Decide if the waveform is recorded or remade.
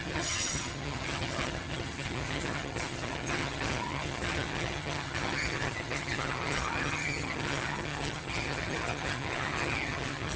remade